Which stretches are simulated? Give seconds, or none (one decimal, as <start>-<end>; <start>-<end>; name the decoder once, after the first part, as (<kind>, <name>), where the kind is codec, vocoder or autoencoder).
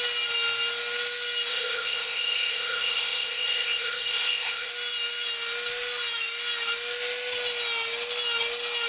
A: 1.5-4.7 (codec, ZipCodec)